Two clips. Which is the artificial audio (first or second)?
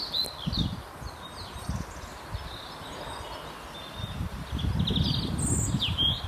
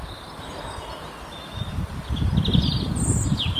second